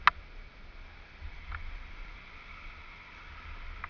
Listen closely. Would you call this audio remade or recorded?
recorded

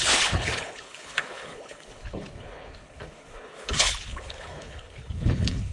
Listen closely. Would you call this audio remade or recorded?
remade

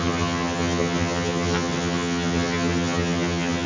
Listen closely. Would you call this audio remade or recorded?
remade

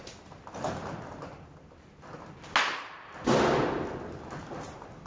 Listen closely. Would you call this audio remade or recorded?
recorded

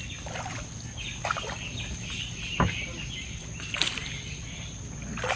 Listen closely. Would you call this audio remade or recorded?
recorded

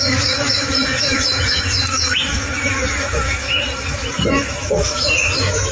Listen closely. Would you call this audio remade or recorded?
remade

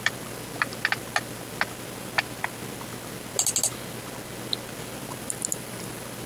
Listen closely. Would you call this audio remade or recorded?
recorded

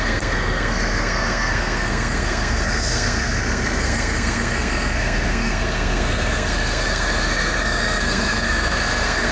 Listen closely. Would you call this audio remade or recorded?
remade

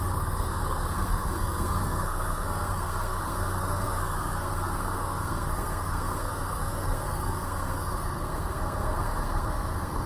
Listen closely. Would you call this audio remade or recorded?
remade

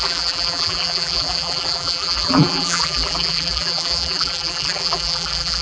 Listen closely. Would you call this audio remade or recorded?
remade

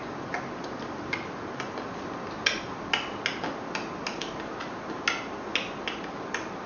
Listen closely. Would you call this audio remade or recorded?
recorded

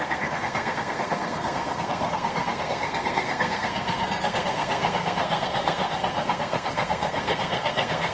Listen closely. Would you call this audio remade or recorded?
remade